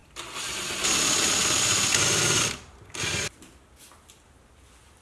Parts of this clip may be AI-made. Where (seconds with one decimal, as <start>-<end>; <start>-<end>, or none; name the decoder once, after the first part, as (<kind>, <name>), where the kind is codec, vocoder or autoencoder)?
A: 0.0-2.4 (vocoder, BigVGAN v2)